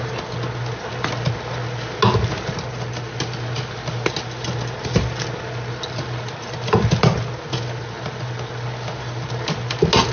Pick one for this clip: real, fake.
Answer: real